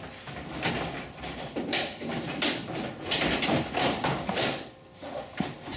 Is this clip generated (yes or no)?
no